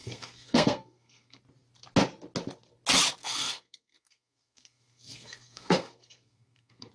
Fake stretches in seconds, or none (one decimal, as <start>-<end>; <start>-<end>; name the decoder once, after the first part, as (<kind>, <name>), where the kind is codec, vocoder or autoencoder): 0.0-1.4 (codec, SNAC); 3.2-6.9